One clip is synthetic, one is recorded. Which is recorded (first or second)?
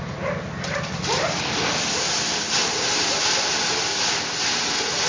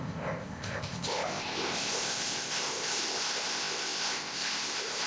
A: first